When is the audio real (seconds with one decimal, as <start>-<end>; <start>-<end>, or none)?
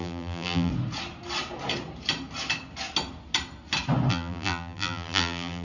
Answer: 0.7-4.1